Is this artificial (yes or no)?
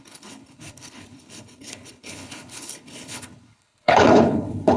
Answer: yes